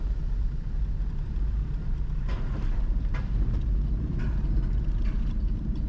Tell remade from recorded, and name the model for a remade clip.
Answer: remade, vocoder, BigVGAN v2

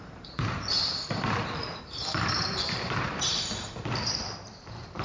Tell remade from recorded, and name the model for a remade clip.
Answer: remade, vocoder, BigVGAN v2